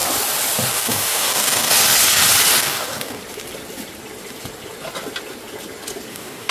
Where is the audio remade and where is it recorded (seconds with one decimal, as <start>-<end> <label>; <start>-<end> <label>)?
0.0-0.7 recorded; 0.7-1.7 remade; 1.7-2.6 recorded; 2.6-3.2 remade; 3.2-6.1 recorded; 6.1-6.5 remade